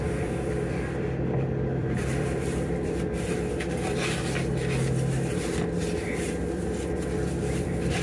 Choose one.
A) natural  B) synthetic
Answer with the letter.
B